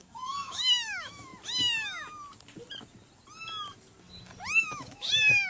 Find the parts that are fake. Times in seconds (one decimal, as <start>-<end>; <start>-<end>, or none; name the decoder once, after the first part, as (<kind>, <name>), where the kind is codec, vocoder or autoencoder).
0.0-1.3 (autoencoder, DAC-VAE); 4.6-5.5